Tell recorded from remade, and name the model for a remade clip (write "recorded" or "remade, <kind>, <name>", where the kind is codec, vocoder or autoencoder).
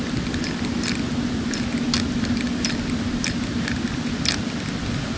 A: recorded